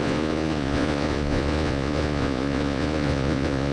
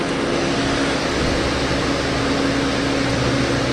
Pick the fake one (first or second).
first